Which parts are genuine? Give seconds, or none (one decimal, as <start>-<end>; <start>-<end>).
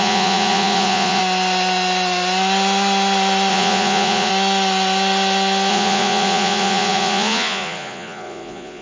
1.2-3.5; 4.3-5.7